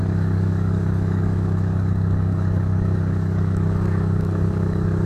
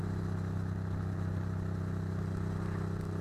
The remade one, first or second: first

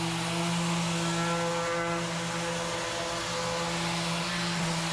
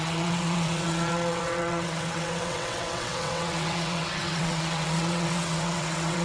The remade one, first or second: second